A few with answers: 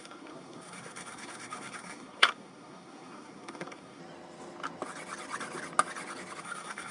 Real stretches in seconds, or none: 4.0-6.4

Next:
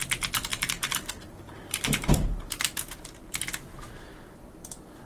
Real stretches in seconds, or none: 0.0-0.5; 3.2-3.7; 4.5-5.1

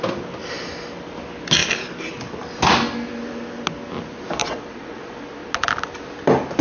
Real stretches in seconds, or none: 0.0-4.4; 5.0-6.6

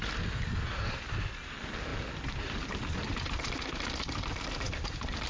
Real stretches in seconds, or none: 0.0-5.3